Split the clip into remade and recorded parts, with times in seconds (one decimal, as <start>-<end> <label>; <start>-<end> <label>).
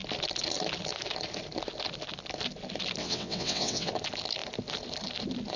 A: 0.0-3.0 recorded; 3.0-3.9 remade; 3.9-5.6 recorded